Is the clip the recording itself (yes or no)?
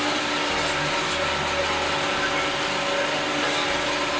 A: yes